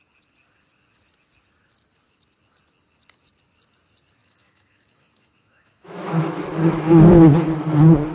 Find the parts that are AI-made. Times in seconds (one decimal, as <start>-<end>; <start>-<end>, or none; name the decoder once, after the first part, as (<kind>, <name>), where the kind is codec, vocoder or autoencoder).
4.2-6.9 (autoencoder, DAC-VAE)